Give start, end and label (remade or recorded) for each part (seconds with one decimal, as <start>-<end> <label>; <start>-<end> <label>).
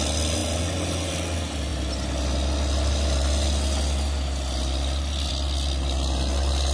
0.0-6.7 recorded